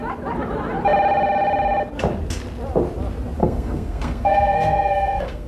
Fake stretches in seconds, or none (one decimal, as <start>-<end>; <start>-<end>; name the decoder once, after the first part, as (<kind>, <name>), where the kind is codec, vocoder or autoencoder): 3.4-5.5 (codec, SNAC)